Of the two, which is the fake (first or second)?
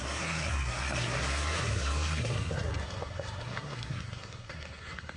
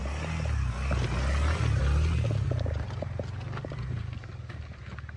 first